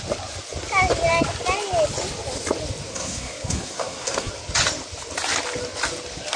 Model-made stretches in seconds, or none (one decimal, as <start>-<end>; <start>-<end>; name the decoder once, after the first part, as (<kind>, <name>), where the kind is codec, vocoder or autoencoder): 2.9-4.3 (codec, SNAC)